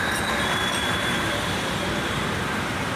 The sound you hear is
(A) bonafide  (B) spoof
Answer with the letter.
B